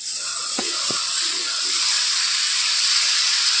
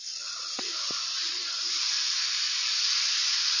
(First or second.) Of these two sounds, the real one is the second